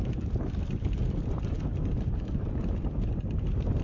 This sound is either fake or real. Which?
fake